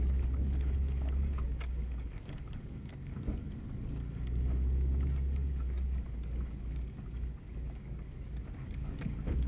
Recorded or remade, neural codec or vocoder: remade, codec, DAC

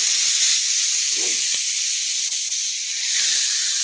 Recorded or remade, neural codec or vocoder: recorded